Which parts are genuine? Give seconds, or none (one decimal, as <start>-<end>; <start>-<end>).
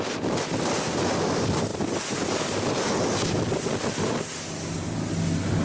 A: 0.0-5.6